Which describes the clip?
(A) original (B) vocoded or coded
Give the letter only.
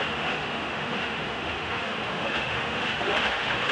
B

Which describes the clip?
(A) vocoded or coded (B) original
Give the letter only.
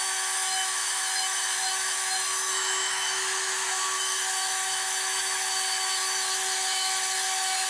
A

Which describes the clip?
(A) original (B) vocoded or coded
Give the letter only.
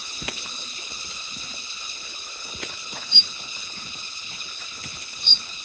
B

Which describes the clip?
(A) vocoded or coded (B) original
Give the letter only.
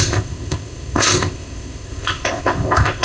A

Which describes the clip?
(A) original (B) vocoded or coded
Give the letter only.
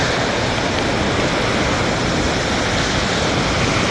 A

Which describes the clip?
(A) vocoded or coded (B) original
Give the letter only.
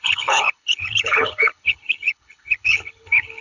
A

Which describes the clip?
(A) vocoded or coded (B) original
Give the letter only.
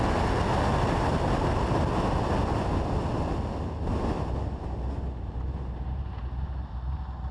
B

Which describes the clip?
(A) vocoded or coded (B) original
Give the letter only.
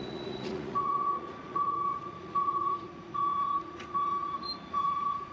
A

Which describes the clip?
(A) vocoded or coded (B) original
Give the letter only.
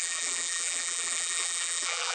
A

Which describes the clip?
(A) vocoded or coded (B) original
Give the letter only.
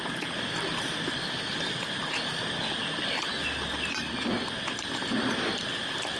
A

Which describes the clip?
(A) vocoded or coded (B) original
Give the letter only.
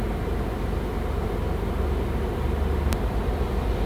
B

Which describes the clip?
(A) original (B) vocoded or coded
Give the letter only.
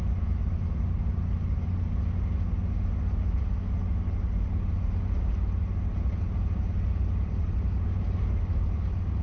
A